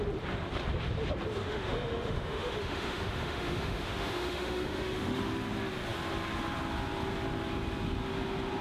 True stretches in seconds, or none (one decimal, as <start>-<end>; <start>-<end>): 0.0-1.4; 5.3-8.6